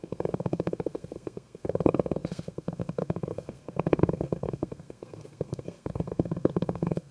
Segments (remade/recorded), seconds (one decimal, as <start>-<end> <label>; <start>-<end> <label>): 0.0-7.1 remade